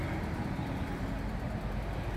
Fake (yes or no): no